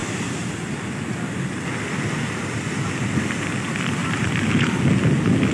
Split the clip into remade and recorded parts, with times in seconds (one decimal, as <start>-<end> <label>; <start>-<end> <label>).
0.0-4.0 recorded; 4.0-4.8 remade; 4.8-5.5 recorded